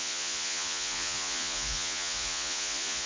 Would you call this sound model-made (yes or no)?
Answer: yes